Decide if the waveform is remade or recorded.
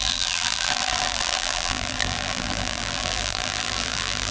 remade